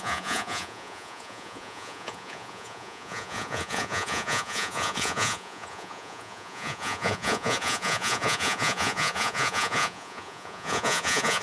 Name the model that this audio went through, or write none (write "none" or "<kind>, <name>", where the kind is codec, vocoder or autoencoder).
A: vocoder, Vocos